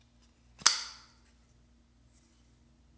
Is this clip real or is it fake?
real